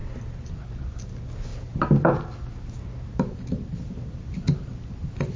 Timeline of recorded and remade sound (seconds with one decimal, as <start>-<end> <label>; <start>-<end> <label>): 0.0-5.4 recorded